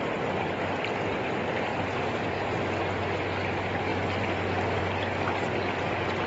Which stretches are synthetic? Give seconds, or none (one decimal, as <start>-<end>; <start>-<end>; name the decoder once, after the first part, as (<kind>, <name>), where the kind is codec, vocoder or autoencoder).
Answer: 1.7-2.5 (vocoder, BigVGAN v2)